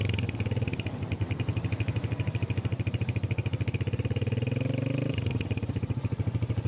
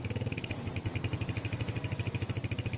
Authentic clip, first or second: second